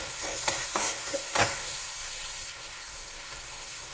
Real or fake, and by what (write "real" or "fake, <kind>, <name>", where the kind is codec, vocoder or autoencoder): fake, codec, SNAC